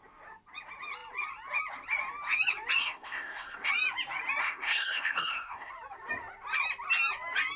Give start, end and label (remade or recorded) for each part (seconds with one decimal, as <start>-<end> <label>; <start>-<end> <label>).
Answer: 0.0-2.8 recorded; 2.8-3.7 remade; 3.7-4.4 recorded; 4.4-5.7 remade; 5.7-7.6 recorded

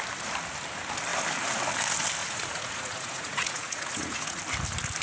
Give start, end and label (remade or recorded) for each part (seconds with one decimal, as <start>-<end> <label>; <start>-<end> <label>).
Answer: 0.0-2.2 recorded; 2.2-4.4 remade; 4.4-5.0 recorded

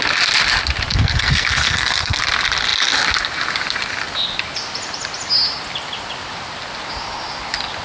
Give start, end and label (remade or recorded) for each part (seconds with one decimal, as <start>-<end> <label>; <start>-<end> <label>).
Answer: 0.0-0.9 recorded; 0.9-2.2 remade; 2.2-7.8 recorded

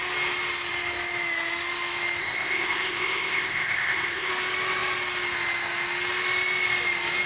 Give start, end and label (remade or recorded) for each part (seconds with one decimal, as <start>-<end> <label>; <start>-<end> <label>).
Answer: 0.0-2.2 recorded; 2.2-4.3 remade; 4.3-7.3 recorded

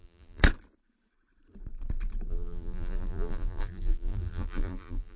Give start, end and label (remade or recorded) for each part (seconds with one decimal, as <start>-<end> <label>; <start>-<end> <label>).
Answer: 0.0-0.4 remade; 0.4-2.3 recorded; 2.3-5.2 remade